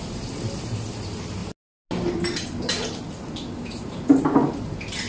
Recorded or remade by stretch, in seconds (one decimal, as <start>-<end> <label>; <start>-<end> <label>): 0.0-5.1 recorded